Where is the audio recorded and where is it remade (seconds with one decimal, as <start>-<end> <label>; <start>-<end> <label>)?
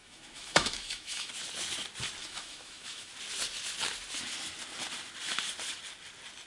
0.0-1.3 remade; 1.3-2.2 recorded; 2.2-3.1 remade; 3.1-6.5 recorded